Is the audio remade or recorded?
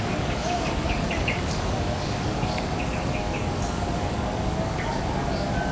remade